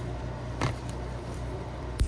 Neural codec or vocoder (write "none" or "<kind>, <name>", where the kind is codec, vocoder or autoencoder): vocoder, BigVGAN v2